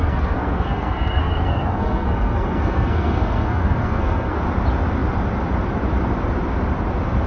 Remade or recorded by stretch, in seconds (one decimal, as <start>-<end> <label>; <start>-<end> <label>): 0.0-4.4 remade; 4.4-7.3 recorded